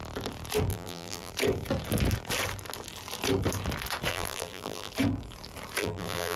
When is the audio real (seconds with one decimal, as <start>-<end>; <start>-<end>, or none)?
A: 0.0-0.7; 1.3-4.1; 4.9-5.8